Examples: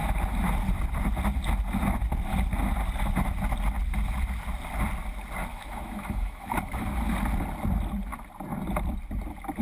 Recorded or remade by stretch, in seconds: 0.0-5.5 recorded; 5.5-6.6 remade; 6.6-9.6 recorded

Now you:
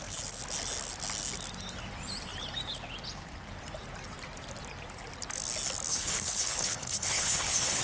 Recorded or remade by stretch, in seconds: 0.0-5.9 recorded; 5.9-7.8 remade

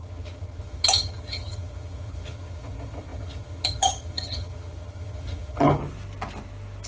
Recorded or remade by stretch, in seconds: 0.0-5.8 remade; 5.8-6.9 recorded

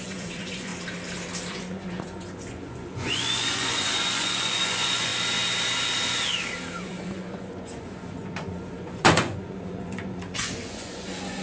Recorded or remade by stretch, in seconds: 0.0-0.7 remade; 0.7-1.5 recorded; 1.5-5.1 remade; 5.1-6.8 recorded; 6.8-11.4 remade